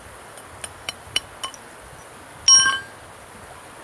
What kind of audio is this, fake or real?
real